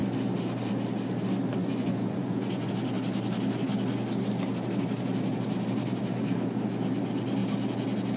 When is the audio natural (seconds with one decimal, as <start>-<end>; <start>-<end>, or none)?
0.0-1.6; 2.7-8.2

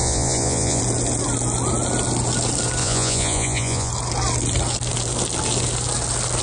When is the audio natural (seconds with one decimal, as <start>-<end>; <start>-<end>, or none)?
0.8-2.8; 3.9-6.4

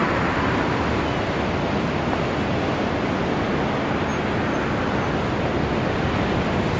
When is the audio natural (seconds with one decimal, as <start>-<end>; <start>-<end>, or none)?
0.0-6.8